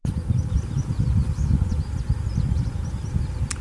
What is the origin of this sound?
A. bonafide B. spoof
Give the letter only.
A